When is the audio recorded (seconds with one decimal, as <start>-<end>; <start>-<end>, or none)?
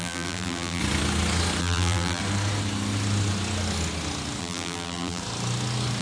0.8-1.6; 2.2-4.4; 5.2-6.0